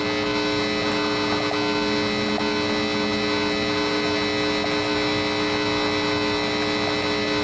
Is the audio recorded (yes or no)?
yes